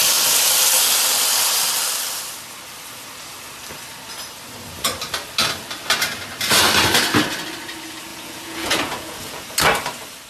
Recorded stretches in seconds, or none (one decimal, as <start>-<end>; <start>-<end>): 0.0-8.1; 9.4-10.3